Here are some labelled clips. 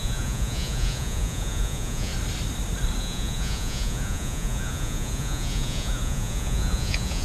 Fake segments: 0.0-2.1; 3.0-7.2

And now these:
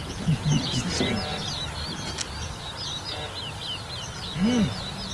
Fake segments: 0.0-0.9

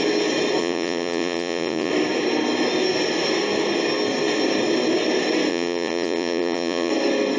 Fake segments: 0.6-1.9; 5.5-6.9

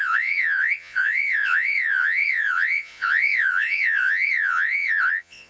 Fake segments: 0.0-5.5